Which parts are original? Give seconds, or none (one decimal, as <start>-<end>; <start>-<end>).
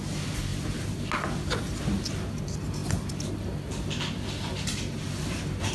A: 0.0-5.7